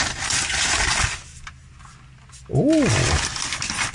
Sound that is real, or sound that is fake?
real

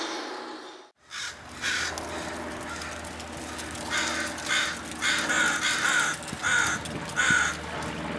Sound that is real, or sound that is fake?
real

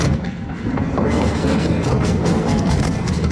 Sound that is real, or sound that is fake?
fake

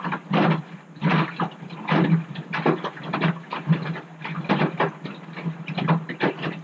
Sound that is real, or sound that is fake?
real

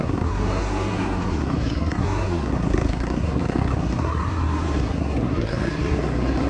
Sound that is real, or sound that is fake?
fake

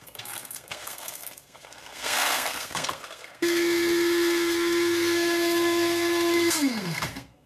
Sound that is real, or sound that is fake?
fake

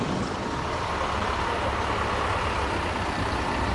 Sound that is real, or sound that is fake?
real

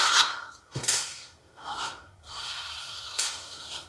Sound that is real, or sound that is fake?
fake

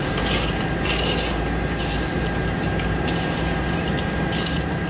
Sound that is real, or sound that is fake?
real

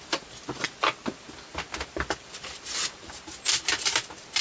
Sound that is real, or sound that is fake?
real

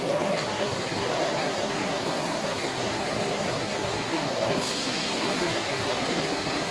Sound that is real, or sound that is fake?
fake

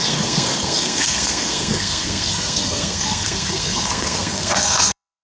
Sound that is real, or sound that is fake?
fake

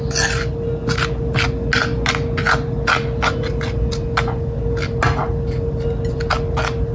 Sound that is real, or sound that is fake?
real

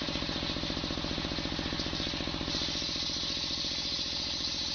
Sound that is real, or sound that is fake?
real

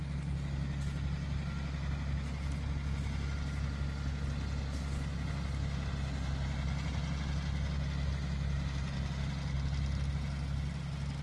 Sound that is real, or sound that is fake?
real